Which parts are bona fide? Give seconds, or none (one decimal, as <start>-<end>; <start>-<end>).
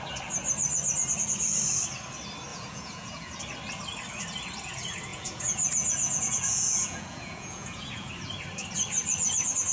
0.0-2.5; 3.4-5.1; 8.1-9.7